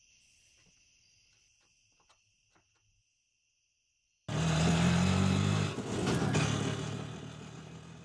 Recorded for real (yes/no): yes